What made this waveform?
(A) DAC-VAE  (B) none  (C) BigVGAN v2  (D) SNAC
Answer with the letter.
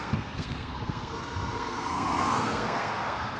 D